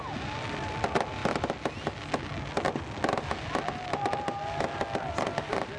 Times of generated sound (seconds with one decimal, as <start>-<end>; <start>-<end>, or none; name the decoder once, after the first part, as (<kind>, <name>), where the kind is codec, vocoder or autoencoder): none